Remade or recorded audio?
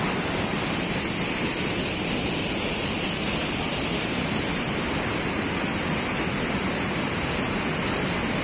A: remade